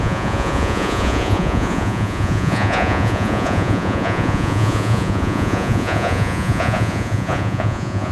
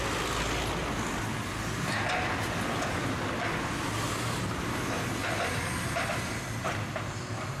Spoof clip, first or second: first